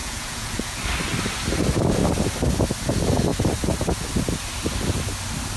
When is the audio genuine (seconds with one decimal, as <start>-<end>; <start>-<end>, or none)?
0.8-5.6